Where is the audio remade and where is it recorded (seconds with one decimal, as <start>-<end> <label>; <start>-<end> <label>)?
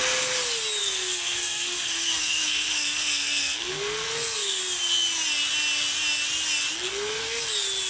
0.0-0.8 recorded; 0.8-4.6 remade; 4.6-6.9 recorded; 6.9-7.5 remade; 7.5-7.9 recorded